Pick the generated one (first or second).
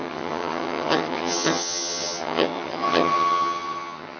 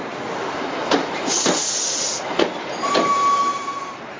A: first